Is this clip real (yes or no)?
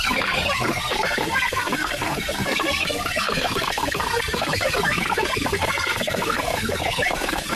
no